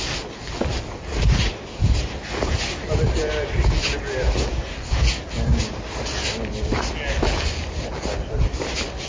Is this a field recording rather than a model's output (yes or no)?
yes